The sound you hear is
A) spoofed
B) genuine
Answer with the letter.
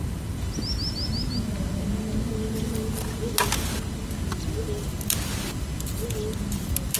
B